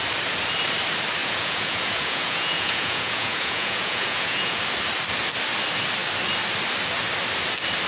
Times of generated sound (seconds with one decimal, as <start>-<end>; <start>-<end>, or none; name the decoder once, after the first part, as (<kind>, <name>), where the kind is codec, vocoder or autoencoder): 1.2-4.6 (vocoder, Vocos)